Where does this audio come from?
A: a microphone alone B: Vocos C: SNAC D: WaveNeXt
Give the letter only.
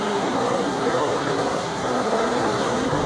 C